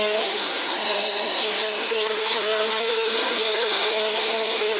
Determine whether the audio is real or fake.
fake